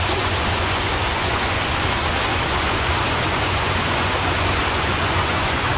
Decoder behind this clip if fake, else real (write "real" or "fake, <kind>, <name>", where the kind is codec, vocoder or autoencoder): fake, vocoder, Vocos